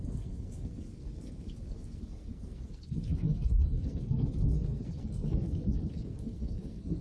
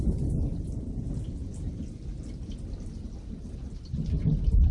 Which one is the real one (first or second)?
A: second